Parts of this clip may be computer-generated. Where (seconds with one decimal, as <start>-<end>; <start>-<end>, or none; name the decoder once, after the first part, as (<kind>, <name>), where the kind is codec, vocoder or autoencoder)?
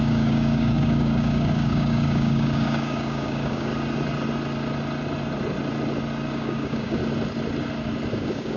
0.0-3.7 (codec, DAC); 6.3-7.0; 8.1-8.6